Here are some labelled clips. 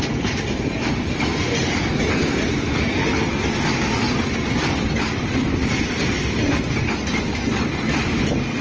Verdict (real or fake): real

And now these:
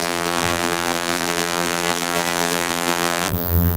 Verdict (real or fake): fake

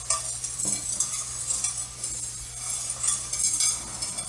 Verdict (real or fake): real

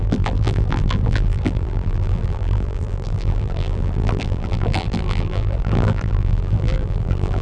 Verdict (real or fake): fake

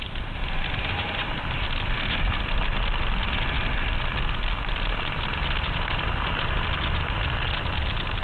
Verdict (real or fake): real